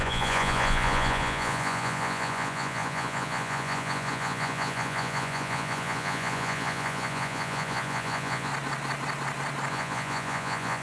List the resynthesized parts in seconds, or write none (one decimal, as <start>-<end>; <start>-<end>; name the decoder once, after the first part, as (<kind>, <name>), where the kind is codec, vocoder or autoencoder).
0.0-8.5 (vocoder, Vocos); 9.7-10.8